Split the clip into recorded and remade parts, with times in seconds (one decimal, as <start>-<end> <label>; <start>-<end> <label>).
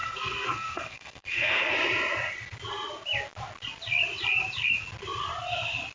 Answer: 0.0-1.7 remade; 1.7-5.9 recorded